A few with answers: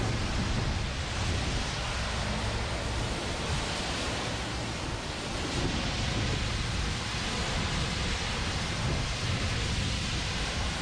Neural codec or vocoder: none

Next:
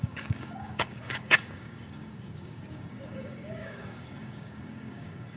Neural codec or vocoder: codec, DAC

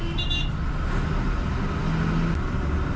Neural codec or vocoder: none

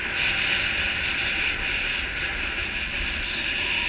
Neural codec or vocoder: none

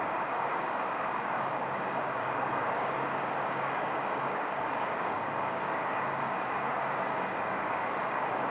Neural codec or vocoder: codec, DAC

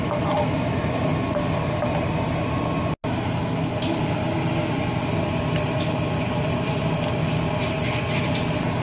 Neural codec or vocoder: none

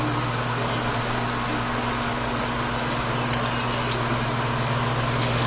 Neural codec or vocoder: none